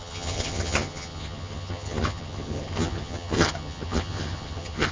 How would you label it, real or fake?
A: fake